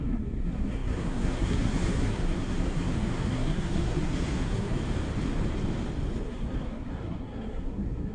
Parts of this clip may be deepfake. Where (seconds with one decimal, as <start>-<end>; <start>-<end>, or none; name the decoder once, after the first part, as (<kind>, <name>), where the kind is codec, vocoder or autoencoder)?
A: 0.0-4.8 (codec, SNAC); 6.2-8.1